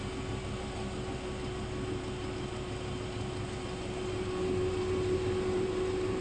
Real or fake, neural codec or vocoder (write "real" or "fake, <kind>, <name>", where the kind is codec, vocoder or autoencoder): real